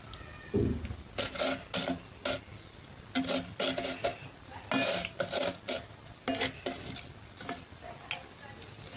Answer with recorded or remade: recorded